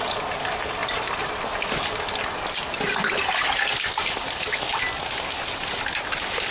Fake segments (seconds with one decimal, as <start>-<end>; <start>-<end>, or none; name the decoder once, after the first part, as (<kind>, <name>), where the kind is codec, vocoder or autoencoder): none